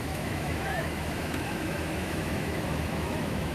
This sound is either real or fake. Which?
fake